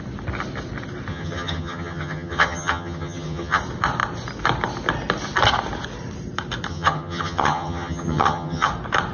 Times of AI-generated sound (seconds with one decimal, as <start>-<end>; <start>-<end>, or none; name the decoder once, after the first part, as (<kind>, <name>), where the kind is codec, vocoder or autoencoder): 1.1-3.6 (vocoder, HiFi-GAN); 6.7-8.7

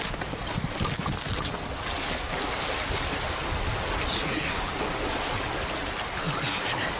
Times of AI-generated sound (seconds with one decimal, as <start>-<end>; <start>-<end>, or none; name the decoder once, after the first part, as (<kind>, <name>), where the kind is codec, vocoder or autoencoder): none

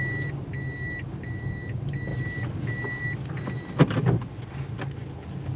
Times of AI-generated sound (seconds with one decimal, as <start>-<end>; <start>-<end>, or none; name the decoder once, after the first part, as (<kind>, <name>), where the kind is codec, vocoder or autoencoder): none